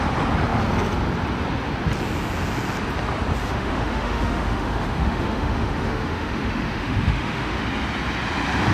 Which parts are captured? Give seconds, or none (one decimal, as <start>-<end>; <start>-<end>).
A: 0.0-3.4; 7.6-8.7